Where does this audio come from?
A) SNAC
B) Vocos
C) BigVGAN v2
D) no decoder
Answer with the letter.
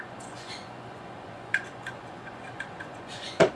B